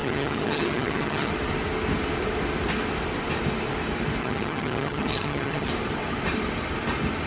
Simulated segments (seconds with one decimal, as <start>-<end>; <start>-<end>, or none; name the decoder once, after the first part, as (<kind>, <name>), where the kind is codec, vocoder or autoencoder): 0.0-1.3 (vocoder, HiFi-GAN); 4.2-5.7